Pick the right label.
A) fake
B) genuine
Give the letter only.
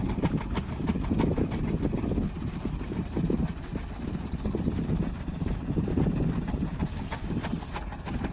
B